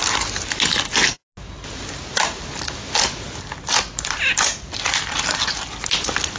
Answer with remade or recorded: recorded